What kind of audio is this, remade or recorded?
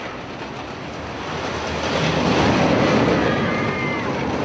recorded